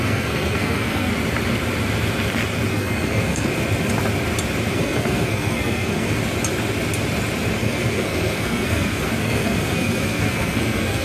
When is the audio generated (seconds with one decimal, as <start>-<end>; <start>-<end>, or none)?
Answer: 0.0-1.1; 2.7-3.5; 4.7-6.2; 7.6-11.0